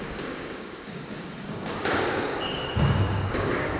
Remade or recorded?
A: remade